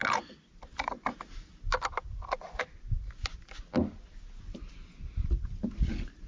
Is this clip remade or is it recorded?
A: recorded